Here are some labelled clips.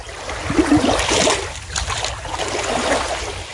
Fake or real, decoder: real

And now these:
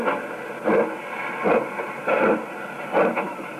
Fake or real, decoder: real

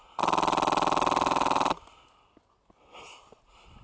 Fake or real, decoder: real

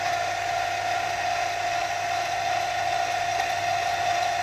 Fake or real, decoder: real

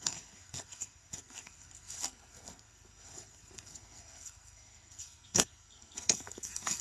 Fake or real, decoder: fake, codec, SNAC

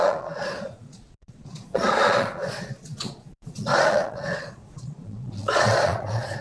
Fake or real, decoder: fake, vocoder, Vocos